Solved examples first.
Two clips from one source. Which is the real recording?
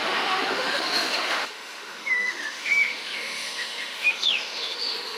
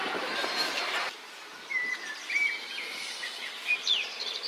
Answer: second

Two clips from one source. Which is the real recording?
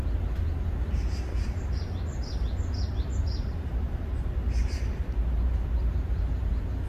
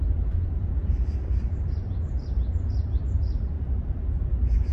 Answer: first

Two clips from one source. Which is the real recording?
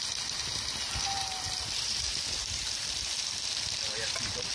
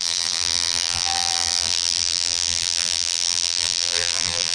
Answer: first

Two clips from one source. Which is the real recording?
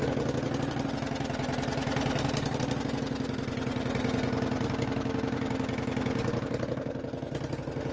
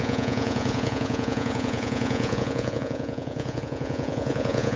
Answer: first